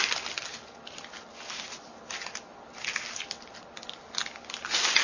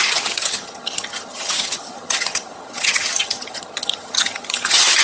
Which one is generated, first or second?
second